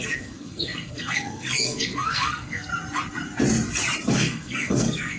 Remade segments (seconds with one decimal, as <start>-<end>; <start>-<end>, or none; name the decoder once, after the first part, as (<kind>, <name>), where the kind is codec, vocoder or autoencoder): 0.0-2.7 (codec, SNAC); 4.1-5.2